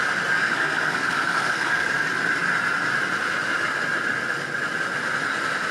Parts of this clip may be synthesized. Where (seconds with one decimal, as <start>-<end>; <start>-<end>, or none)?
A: 0.4-1.9